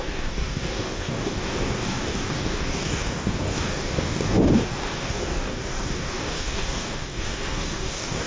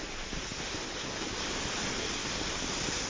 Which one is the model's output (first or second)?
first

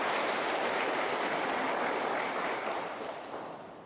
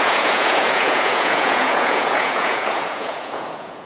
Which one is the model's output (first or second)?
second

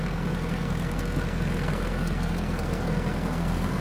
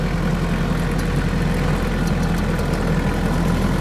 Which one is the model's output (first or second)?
first